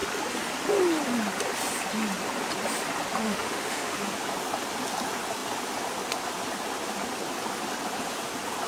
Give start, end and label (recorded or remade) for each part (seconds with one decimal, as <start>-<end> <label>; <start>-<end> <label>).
0.0-3.2 recorded; 3.2-4.0 remade; 4.0-8.7 recorded